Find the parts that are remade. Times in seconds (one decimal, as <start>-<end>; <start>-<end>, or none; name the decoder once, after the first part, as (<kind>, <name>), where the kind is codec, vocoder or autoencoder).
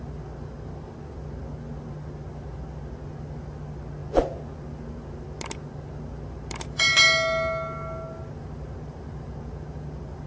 none